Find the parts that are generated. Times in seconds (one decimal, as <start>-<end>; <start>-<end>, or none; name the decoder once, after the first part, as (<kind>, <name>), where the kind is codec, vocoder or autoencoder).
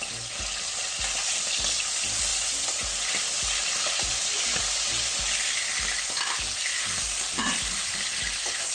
none